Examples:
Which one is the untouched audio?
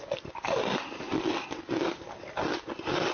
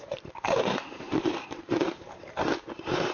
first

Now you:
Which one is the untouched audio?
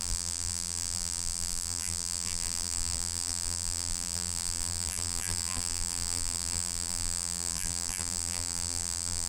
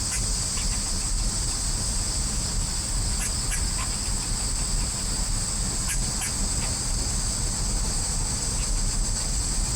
second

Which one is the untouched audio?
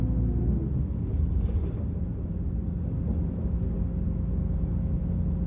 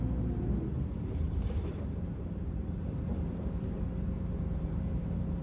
first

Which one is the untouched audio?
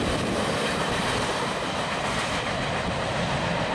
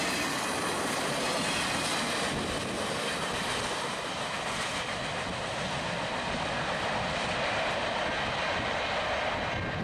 second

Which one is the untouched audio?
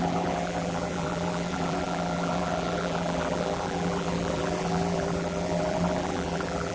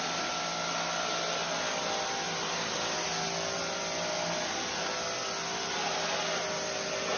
second